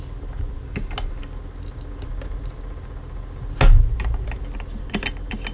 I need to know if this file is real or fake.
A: real